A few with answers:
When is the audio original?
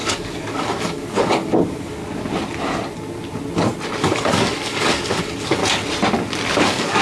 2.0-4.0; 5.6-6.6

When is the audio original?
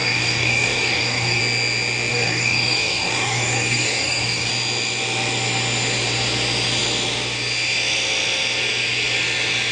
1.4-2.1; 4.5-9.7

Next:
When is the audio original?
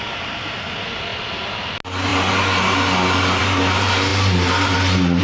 0.0-5.2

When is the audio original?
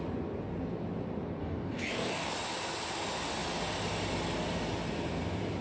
0.0-1.4; 2.3-5.6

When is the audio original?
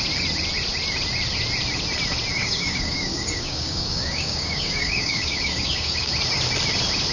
0.0-2.4; 6.1-7.1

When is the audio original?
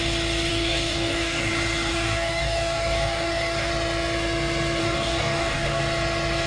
0.0-0.5; 1.5-1.9; 3.7-4.8; 5.8-6.5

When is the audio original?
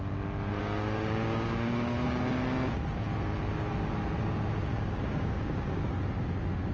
0.0-0.6; 2.2-4.7; 5.9-6.7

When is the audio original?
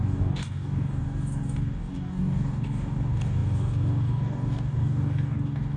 none